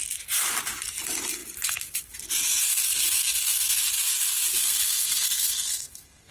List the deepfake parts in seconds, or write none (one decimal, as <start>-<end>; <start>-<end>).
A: 2.7-3.8; 4.5-6.3